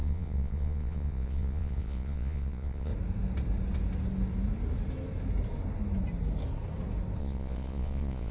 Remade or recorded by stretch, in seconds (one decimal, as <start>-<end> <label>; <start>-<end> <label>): 0.0-2.9 remade; 2.9-7.2 recorded; 7.2-8.3 remade